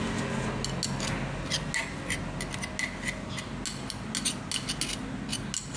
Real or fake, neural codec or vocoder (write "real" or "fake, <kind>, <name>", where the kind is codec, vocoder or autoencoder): real